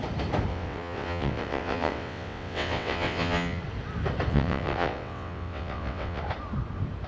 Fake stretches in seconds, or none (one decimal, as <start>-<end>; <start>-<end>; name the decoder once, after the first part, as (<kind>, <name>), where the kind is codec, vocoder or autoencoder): 0.5-3.6 (vocoder, WaveNeXt); 4.3-6.2